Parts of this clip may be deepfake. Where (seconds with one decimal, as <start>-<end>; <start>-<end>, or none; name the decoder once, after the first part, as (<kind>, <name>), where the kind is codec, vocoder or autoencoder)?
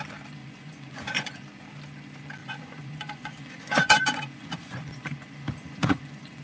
0.4-1.4 (vocoder, Vocos); 2.4-6.4